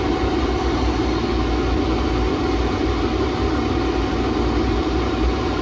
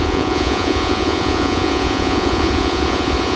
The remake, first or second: second